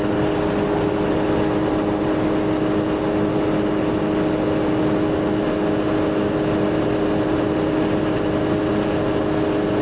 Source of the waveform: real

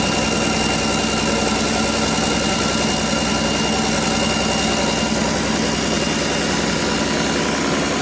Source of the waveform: real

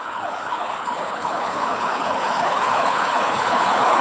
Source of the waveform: fake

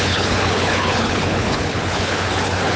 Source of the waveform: fake